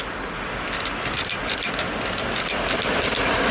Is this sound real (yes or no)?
yes